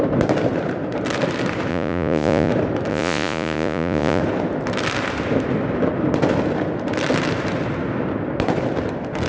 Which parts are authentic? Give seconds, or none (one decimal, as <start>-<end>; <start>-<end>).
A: 0.0-1.7; 2.5-2.9; 4.2-9.3

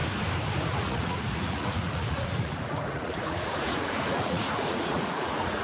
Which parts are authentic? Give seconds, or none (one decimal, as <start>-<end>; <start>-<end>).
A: 0.0-0.6

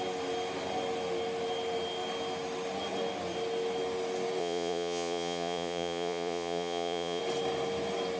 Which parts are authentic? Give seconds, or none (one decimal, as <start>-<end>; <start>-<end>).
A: 0.0-4.4; 7.2-8.2

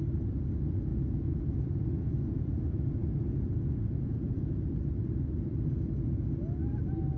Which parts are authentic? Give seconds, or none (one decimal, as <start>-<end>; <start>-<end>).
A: 0.0-0.9; 2.5-3.0; 4.7-7.2

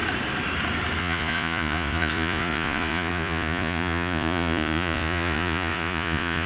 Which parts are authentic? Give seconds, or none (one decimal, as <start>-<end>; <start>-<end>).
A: 0.0-1.0

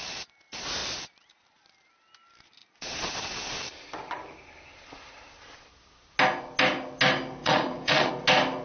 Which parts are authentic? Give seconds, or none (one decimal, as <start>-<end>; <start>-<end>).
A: 0.0-2.6; 3.1-7.4; 8.1-8.6